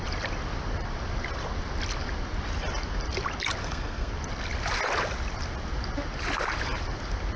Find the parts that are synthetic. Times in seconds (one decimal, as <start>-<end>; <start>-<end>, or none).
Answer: 3.6-4.1